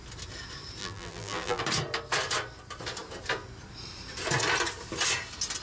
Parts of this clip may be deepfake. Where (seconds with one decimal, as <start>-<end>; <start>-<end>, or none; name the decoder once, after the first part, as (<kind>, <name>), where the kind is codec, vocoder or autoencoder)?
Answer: 0.8-1.6 (vocoder, BigVGAN v2)